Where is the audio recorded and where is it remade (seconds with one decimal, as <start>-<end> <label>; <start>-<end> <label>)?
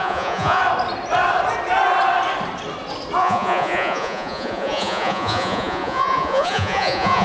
0.0-0.6 remade; 0.6-3.2 recorded; 3.2-7.2 remade